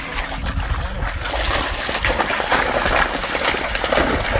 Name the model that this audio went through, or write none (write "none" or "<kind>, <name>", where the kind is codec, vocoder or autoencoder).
none